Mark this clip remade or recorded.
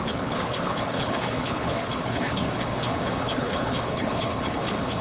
remade